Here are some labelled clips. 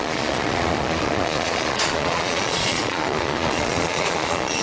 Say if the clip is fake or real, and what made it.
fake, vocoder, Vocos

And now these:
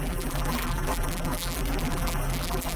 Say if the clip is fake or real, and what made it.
fake, vocoder, BigVGAN v2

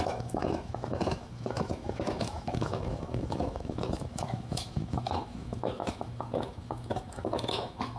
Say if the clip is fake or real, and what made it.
fake, autoencoder, DAC-VAE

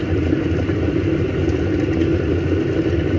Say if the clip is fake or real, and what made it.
real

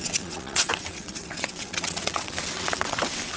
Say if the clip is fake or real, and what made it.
fake, vocoder, WaveNeXt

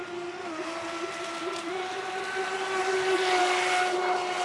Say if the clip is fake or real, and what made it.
real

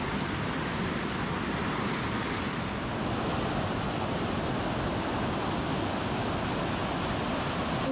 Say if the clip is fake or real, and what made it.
real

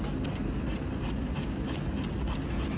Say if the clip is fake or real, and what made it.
real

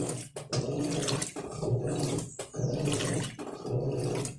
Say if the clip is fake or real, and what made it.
fake, vocoder, BigVGAN v2